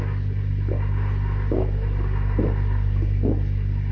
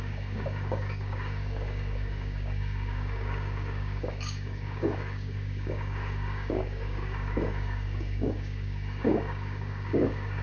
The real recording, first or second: first